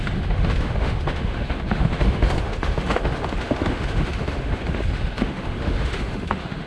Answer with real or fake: fake